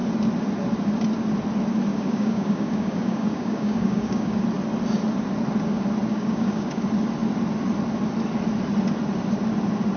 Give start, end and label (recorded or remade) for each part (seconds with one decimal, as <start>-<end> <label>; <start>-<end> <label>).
0.0-1.9 recorded; 1.9-4.4 remade; 4.4-6.1 recorded; 6.1-6.8 remade; 6.8-10.0 recorded